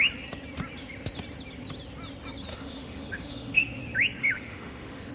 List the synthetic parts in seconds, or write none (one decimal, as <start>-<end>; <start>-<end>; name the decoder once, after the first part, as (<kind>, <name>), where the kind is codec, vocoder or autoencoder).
2.5-3.8 (autoencoder, DAC-VAE); 4.2-5.1